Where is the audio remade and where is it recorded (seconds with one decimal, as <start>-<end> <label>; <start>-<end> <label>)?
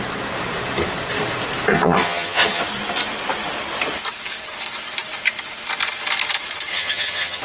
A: 0.0-1.7 recorded; 1.7-2.6 remade; 2.6-6.7 recorded; 6.7-7.4 remade